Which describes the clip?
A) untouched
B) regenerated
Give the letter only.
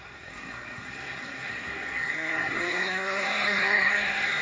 B